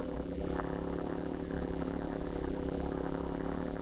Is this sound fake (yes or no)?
yes